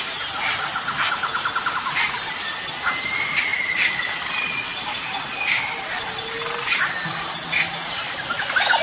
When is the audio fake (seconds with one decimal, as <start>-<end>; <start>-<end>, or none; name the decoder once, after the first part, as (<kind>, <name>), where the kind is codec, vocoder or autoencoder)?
3.5-7.2 (vocoder, BigVGAN v2)